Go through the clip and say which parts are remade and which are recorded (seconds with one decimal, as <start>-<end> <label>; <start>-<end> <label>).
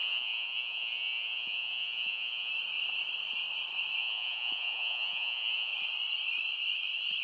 0.0-2.5 remade; 2.5-4.0 recorded; 4.0-5.7 remade; 5.7-7.2 recorded